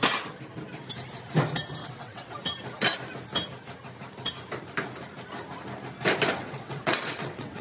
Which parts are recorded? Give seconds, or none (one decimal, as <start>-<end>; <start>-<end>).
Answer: 0.0-1.8; 2.3-6.4